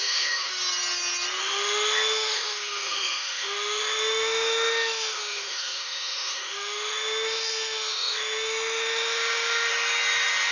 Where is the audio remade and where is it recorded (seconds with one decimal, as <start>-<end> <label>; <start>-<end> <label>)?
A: 0.0-0.5 remade; 0.5-1.4 recorded; 1.4-9.7 remade; 9.7-10.5 recorded